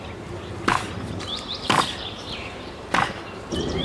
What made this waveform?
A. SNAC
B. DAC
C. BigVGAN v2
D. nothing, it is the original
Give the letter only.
C